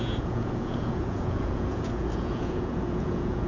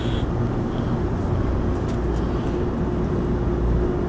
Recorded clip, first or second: second